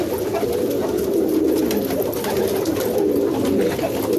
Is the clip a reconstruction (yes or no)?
no